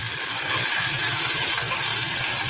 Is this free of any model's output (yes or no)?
yes